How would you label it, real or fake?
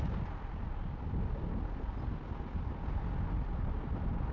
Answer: real